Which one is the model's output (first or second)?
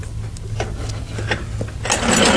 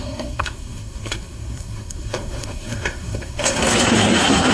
second